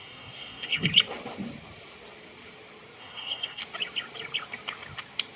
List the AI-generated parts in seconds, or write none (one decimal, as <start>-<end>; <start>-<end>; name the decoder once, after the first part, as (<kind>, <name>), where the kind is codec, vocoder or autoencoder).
0.0-0.9 (codec, SNAC); 3.0-3.6